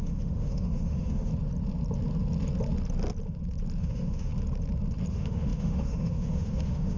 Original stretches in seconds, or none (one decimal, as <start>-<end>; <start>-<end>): 1.3-3.8; 4.3-5.1